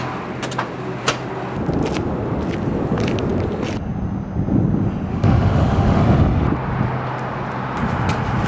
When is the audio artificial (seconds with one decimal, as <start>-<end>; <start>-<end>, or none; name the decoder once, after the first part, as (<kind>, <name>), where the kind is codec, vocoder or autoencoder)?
5.1-6.0 (autoencoder, DAC-VAE)